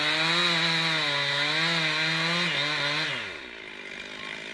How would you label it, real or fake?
real